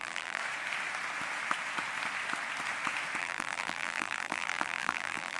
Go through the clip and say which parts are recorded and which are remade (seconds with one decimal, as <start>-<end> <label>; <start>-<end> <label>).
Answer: 0.0-0.4 remade; 0.4-3.2 recorded; 3.2-5.4 remade

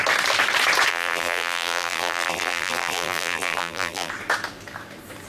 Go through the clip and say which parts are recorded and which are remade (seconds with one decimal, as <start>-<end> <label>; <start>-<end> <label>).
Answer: 0.0-0.9 recorded; 0.9-4.1 remade; 4.1-5.3 recorded

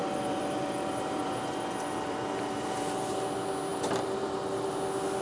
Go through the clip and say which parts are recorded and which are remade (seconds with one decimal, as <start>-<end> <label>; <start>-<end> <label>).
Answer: 0.0-3.1 remade; 3.1-3.7 recorded; 3.7-4.7 remade; 4.7-5.2 recorded